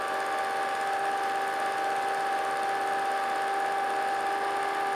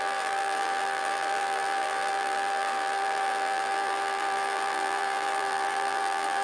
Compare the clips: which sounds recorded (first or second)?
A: first